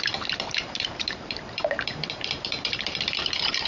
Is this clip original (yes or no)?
no